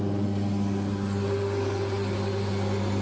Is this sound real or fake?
real